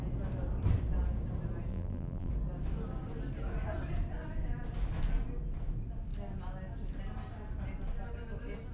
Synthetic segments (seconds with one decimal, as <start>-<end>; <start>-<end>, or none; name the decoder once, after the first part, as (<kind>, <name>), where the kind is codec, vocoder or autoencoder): 1.7-2.3 (vocoder, BigVGAN v2)